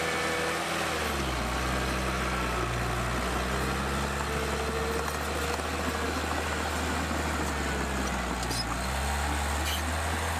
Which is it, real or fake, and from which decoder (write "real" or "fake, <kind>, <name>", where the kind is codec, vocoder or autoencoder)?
real